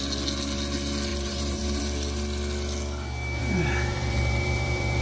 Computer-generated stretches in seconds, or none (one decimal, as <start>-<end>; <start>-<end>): 1.1-1.8; 3.4-5.0